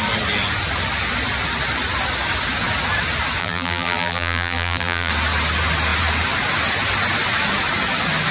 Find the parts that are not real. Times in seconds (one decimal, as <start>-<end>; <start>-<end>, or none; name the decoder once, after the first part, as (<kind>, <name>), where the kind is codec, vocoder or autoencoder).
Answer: 3.4-5.1 (vocoder, BigVGAN v2)